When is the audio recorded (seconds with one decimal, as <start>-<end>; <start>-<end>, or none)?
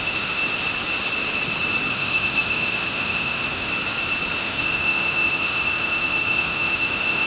0.4-1.9; 3.7-4.4